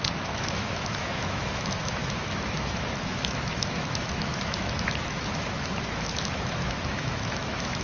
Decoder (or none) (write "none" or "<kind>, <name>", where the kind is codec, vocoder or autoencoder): autoencoder, DAC-VAE